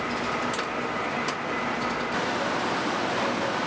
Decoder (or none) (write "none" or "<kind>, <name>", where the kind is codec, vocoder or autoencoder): none